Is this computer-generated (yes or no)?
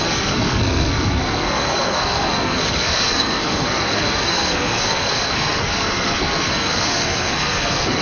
yes